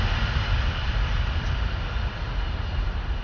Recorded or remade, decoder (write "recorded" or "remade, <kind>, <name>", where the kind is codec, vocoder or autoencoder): remade, vocoder, BigVGAN v2